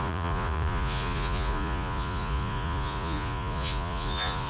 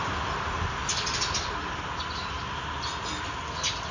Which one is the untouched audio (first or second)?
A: second